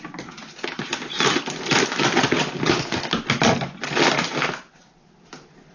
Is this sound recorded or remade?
recorded